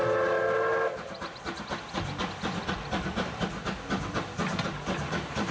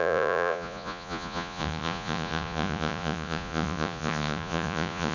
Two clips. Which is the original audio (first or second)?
first